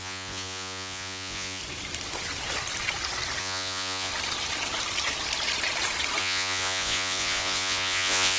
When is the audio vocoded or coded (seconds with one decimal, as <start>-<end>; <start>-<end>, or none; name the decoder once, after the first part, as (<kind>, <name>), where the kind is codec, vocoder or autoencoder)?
0.0-1.6 (vocoder, Vocos); 3.4-4.1; 6.2-8.4

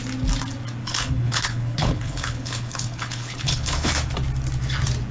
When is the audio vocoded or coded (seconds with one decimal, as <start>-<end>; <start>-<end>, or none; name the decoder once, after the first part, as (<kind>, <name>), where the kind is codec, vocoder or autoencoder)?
0.8-3.9 (codec, HILCodec)

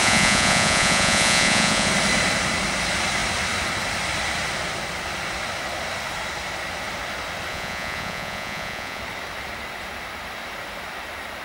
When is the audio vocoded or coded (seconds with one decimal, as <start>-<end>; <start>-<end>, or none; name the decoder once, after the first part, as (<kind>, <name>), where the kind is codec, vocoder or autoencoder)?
0.0-1.9 (vocoder, Vocos); 7.5-9.0

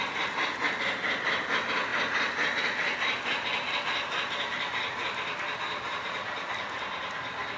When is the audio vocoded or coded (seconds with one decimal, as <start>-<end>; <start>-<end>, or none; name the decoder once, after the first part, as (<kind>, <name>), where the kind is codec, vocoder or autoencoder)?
none